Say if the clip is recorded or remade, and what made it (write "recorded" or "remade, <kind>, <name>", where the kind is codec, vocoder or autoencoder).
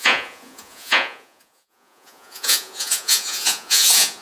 remade, vocoder, Vocos